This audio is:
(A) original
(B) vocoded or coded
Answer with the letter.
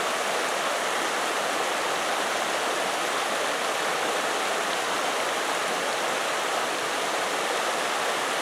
A